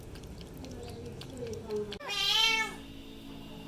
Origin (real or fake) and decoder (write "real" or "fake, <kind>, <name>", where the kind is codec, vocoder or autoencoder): real